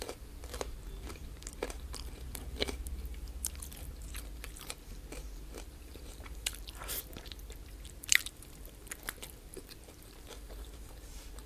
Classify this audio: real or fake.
fake